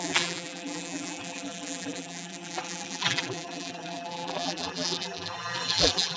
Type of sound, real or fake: fake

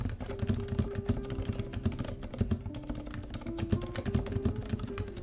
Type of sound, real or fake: real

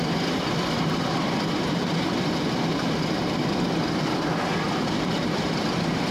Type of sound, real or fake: fake